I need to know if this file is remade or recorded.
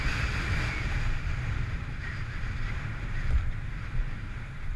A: remade